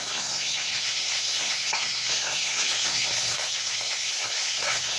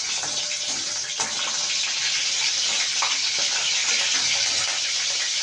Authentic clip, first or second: second